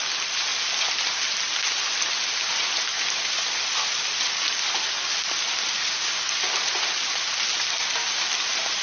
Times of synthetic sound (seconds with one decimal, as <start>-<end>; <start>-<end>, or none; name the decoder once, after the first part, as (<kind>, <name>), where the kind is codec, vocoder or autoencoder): none